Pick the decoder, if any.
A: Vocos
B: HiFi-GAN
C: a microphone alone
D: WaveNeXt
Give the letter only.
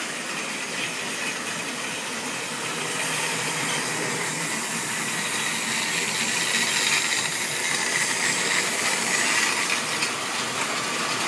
C